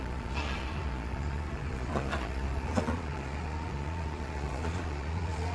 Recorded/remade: remade